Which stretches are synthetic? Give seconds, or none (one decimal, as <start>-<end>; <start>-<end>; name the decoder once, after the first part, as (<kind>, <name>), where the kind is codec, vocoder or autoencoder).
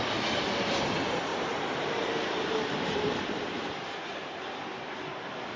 1.3-4.7 (vocoder, BigVGAN v2)